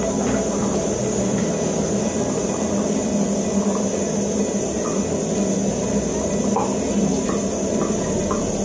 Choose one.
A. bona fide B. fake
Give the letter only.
A